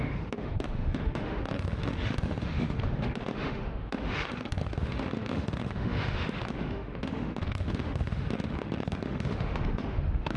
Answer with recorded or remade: remade